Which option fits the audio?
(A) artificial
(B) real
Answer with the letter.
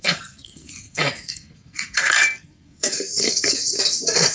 A